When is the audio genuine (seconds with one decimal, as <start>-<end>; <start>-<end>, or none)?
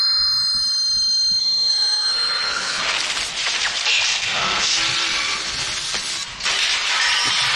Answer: 0.0-1.4; 2.8-4.1; 4.8-7.6